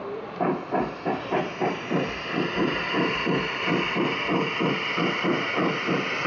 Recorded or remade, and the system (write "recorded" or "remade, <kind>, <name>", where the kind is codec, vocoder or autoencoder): recorded